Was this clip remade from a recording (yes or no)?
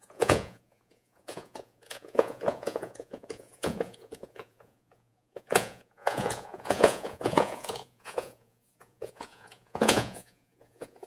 yes